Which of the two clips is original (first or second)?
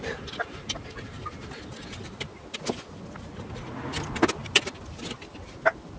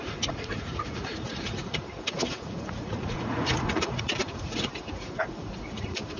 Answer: first